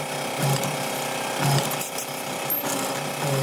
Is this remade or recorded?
recorded